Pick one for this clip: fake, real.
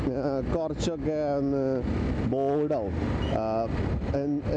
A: real